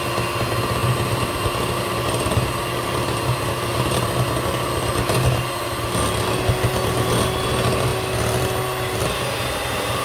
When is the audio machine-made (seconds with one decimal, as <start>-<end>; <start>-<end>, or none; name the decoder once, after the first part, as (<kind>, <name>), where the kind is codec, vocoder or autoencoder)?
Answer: none